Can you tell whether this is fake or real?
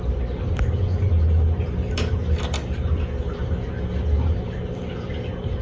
real